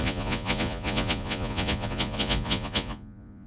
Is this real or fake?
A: fake